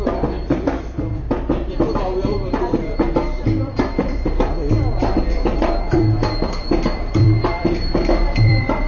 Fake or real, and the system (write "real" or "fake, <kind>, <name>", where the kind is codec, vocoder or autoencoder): fake, vocoder, BigVGAN v2